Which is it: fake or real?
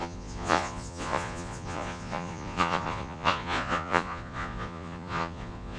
fake